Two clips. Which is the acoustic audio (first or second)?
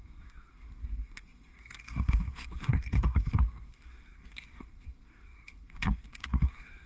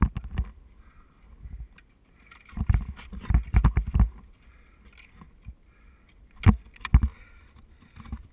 second